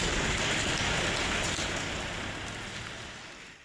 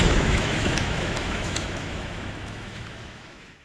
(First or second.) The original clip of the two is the first